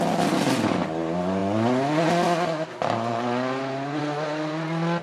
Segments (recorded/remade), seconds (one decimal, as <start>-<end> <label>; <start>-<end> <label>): 0.0-5.0 recorded